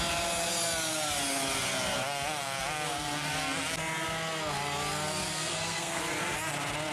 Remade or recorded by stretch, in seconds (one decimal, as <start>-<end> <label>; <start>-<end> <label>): 0.0-5.3 recorded; 5.3-6.0 remade; 6.0-6.9 recorded